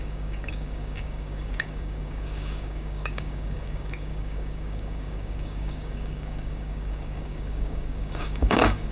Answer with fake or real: fake